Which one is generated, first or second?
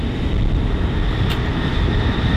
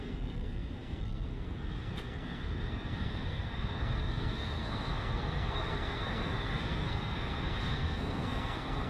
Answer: second